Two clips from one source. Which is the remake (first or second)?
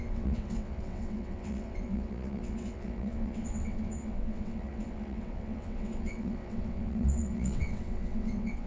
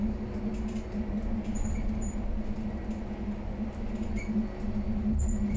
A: first